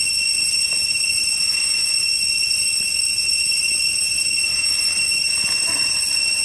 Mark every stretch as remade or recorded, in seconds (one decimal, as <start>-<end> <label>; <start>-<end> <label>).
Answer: 0.0-6.4 recorded